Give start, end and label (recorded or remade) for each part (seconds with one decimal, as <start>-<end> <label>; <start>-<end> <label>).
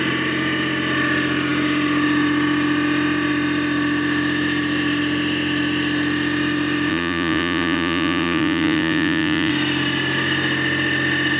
0.0-6.9 recorded; 6.9-9.5 remade; 9.5-11.4 recorded